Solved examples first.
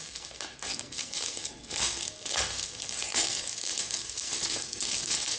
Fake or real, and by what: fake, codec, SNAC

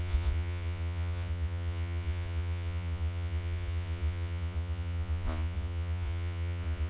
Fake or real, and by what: fake, vocoder, Vocos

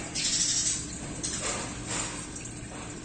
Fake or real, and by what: real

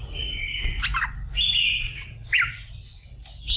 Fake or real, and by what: real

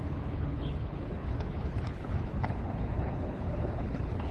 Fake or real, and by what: fake, codec, HILCodec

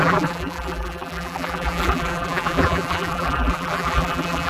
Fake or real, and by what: fake, vocoder, BigVGAN v2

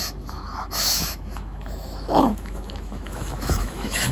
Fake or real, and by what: fake, autoencoder, DAC-VAE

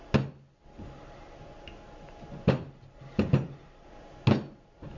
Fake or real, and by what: real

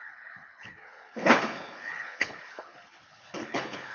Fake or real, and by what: fake, codec, HILCodec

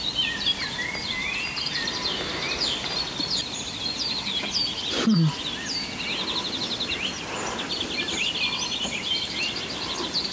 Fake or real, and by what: real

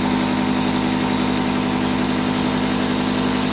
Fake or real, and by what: real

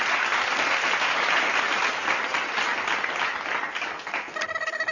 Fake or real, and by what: real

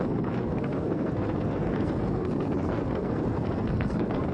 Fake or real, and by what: fake, codec, SNAC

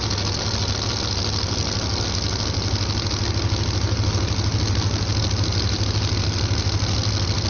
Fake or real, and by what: real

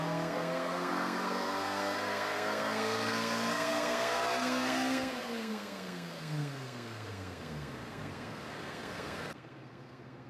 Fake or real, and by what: fake, codec, SNAC